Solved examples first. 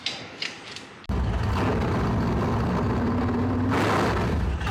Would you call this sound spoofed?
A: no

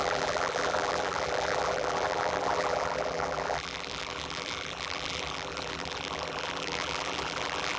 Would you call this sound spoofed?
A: yes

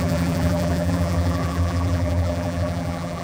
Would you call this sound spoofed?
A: yes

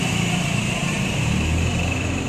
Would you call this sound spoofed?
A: yes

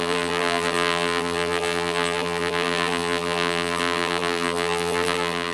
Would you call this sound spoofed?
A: yes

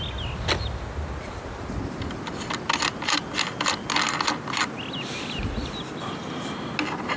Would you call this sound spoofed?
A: no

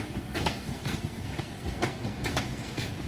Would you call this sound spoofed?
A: yes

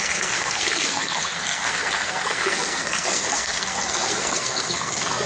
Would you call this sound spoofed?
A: yes